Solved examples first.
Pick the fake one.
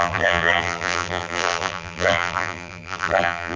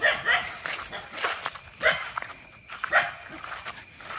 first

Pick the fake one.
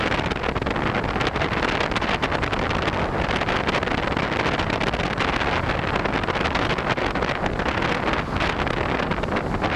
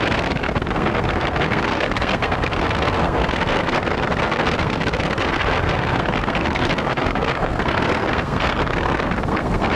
second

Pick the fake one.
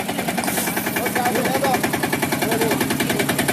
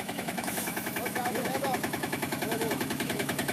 second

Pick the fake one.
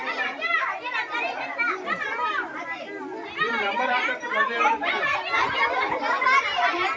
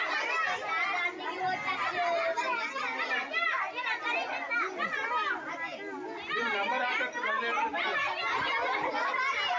first